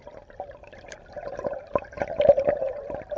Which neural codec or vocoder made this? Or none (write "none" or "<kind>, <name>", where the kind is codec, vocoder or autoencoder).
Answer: vocoder, BigVGAN v2